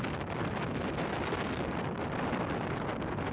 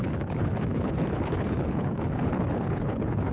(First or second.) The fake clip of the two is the second